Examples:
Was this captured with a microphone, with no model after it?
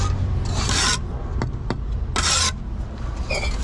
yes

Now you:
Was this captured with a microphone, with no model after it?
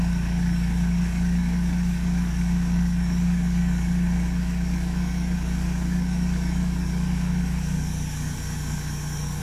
no